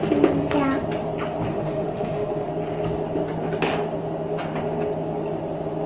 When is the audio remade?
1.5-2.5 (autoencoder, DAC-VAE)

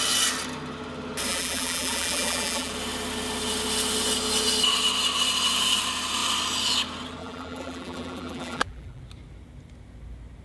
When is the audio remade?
1.3-2.7 (vocoder, BigVGAN v2); 7.2-9.0

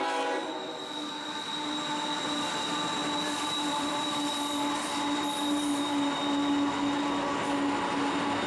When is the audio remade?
3.0-4.1 (vocoder, BigVGAN v2)

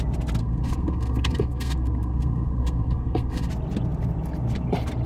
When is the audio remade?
0.4-3.5 (codec, SNAC)